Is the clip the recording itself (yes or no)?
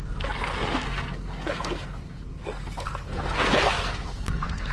no